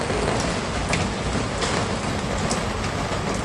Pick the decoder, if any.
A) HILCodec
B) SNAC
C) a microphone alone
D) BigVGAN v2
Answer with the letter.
C